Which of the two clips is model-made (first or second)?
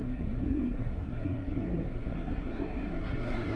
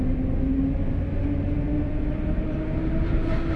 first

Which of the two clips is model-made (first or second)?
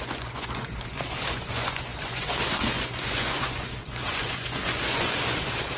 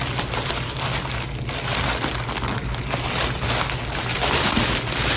first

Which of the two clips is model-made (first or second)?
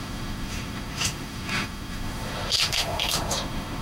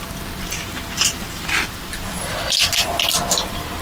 first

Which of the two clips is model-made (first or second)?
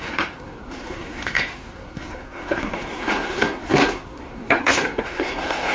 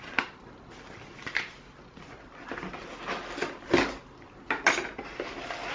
first